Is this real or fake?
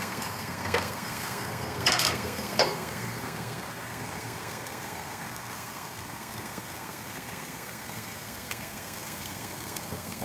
fake